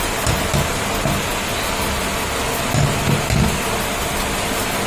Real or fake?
real